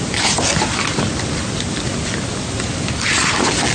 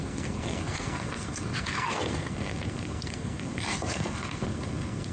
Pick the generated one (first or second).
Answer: second